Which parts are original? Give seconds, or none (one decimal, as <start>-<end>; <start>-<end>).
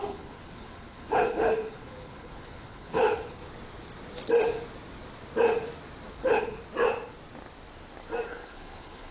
3.4-6.1; 6.6-8.3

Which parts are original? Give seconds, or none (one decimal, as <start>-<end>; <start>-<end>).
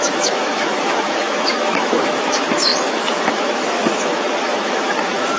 none